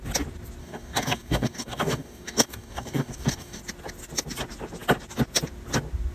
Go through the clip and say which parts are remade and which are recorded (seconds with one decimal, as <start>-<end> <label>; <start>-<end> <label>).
0.0-0.6 recorded; 0.6-3.6 remade; 3.6-6.1 recorded